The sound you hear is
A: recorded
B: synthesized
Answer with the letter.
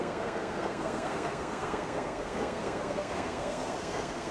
B